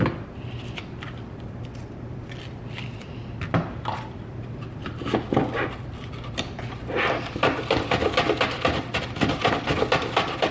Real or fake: real